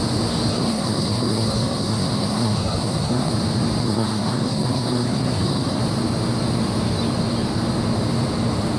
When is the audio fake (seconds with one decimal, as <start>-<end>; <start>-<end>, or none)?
0.5-3.3; 3.8-5.8

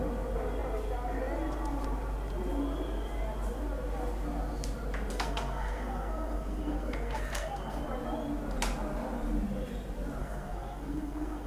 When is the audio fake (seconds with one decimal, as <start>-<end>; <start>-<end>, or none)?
5.1-7.8; 10.2-11.5